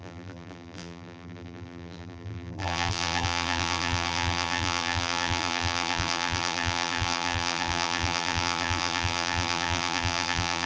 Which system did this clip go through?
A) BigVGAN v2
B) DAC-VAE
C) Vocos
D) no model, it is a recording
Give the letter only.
A